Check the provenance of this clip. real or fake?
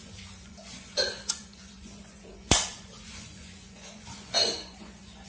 fake